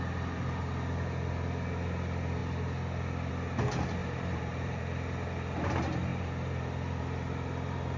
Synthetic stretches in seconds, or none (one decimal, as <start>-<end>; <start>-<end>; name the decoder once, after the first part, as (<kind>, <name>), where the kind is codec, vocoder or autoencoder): 4.0-4.8 (vocoder, BigVGAN v2); 6.1-7.0